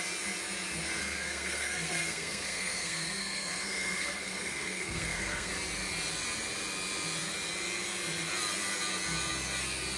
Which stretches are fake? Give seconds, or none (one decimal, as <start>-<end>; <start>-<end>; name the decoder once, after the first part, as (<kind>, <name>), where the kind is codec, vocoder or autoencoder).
1.0-5.5 (codec, SNAC)